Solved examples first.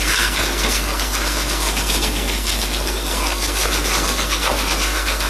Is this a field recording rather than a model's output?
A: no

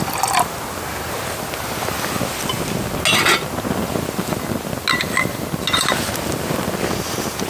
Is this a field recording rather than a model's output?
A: yes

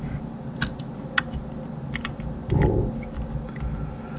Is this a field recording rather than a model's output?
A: yes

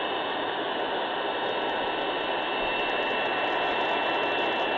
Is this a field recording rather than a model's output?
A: yes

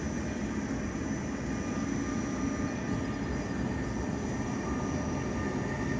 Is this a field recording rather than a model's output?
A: yes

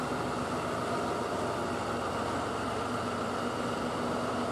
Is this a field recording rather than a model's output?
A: yes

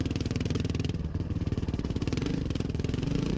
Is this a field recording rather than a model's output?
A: no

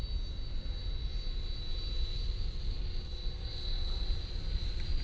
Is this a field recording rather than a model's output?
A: yes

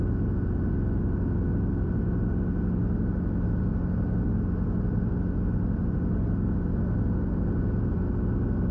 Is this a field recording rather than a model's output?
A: yes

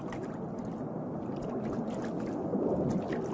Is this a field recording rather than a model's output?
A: yes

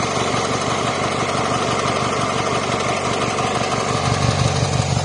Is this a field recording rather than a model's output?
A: yes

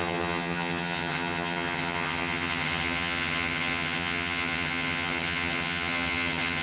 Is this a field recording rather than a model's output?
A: no